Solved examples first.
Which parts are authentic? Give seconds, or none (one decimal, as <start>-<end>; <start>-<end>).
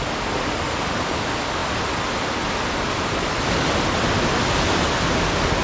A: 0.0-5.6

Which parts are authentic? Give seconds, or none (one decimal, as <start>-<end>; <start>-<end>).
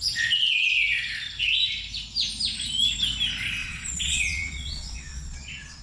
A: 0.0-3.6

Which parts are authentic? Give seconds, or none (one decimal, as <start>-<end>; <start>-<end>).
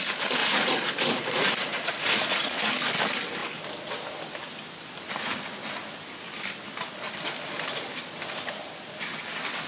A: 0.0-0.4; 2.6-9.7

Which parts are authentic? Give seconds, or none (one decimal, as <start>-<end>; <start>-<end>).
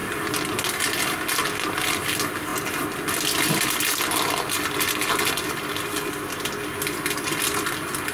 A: 0.0-8.1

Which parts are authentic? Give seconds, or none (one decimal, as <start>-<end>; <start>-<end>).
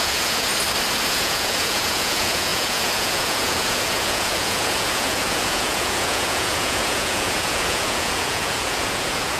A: 0.5-1.0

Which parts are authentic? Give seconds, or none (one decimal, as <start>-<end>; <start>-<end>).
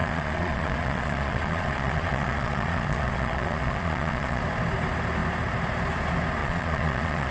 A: 4.4-6.4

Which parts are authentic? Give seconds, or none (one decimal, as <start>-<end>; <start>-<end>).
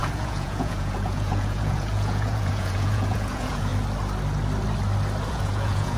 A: 3.7-5.3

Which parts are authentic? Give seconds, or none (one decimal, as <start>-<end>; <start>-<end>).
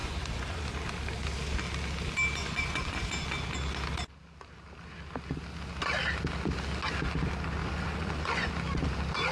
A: 0.6-2.4; 3.1-7.6; 8.5-9.3